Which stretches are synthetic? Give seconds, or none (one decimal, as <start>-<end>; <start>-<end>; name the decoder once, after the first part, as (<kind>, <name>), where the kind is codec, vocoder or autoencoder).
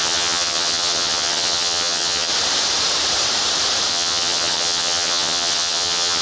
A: 0.0-2.3 (vocoder, HiFi-GAN); 3.9-6.2